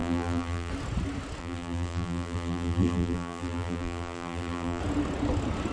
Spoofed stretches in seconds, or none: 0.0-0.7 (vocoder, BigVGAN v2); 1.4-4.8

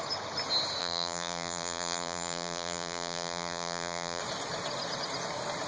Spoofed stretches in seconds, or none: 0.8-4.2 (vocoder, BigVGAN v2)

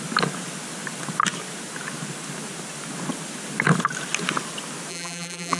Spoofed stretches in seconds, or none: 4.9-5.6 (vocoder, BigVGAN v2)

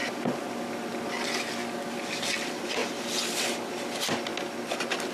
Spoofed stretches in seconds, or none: 2.1-4.3 (vocoder, BigVGAN v2)

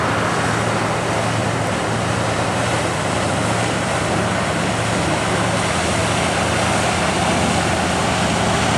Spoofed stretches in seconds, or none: 1.4-4.3 (vocoder, BigVGAN v2)